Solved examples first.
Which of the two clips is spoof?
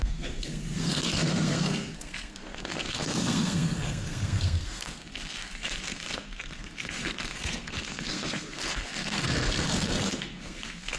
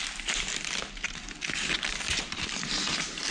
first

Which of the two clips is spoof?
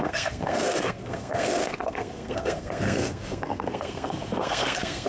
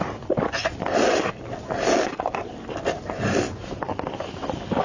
first